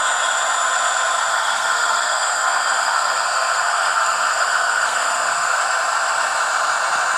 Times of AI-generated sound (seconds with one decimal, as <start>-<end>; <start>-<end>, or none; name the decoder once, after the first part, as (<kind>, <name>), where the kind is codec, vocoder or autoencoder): 1.3-5.6 (codec, SNAC)